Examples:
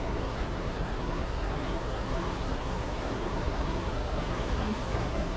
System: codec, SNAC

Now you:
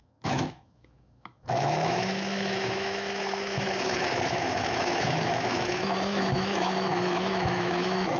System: autoencoder, DAC-VAE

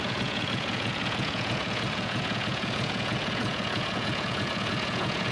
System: vocoder, Vocos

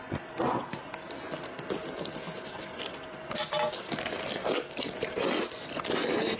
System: none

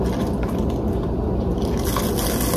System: none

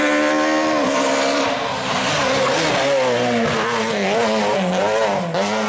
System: none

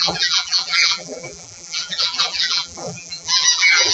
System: vocoder, BigVGAN v2